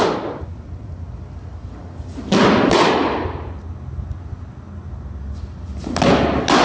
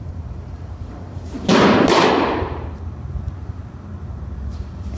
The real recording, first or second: first